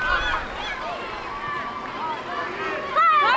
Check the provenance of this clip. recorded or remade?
recorded